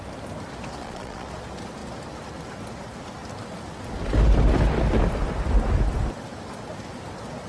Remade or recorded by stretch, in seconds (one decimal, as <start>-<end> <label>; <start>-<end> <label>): 0.0-0.8 recorded; 0.8-1.3 remade; 1.3-7.5 recorded